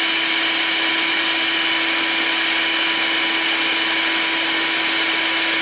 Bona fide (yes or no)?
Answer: yes